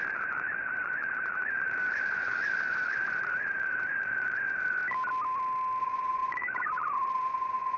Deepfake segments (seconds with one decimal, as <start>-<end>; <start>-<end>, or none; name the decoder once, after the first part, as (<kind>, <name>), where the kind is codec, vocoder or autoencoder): 0.0-4.8 (vocoder, Vocos); 5.8-7.8